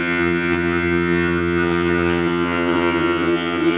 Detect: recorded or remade remade